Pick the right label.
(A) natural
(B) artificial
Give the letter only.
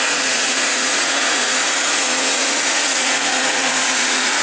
B